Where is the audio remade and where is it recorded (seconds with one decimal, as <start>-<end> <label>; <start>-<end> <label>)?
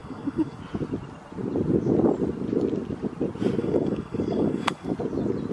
0.0-0.6 remade; 0.6-3.6 recorded; 3.6-4.9 remade; 4.9-5.5 recorded